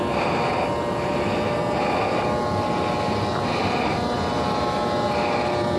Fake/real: real